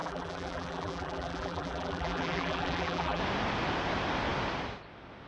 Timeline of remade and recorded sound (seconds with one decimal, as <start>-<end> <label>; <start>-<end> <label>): 0.0-3.2 remade; 3.2-5.3 recorded